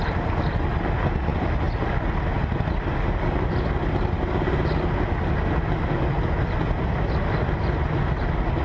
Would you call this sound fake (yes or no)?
no